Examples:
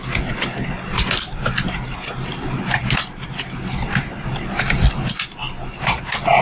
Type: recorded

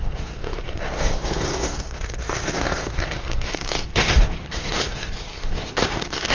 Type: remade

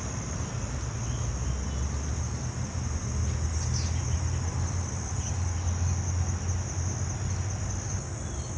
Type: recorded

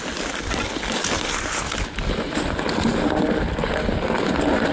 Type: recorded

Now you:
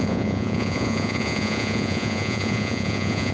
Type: remade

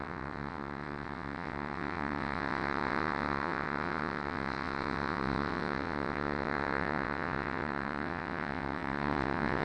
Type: remade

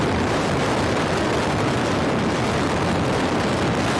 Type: recorded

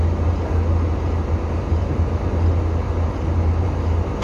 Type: recorded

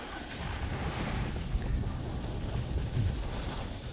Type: recorded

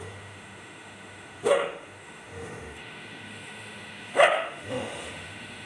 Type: remade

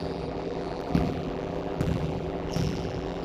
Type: remade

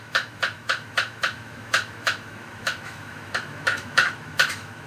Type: remade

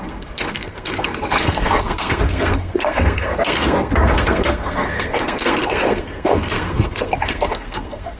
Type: remade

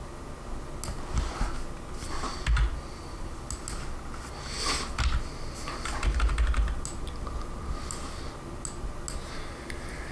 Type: recorded